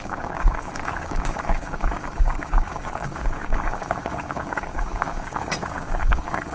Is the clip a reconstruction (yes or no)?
yes